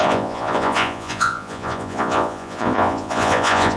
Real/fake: fake